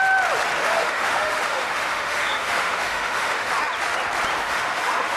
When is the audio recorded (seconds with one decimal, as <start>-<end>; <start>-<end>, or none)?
0.0-0.6; 3.5-4.3